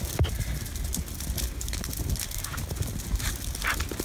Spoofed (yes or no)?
no